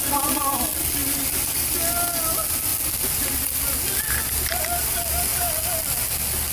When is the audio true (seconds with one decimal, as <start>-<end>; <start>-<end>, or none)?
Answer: 0.0-6.5